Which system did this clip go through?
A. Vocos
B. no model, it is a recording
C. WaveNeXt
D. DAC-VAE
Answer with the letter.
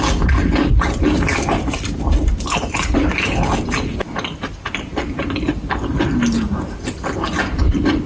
B